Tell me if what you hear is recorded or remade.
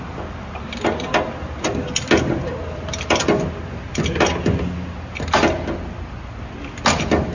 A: recorded